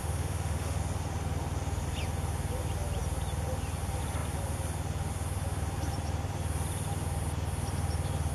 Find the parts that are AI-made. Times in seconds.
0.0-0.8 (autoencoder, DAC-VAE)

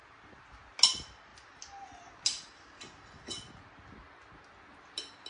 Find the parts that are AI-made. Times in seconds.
none